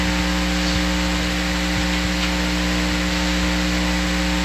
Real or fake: real